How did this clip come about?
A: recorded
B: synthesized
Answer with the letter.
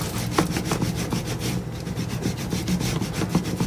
A